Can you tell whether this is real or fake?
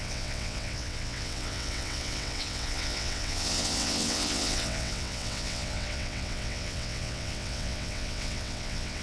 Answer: fake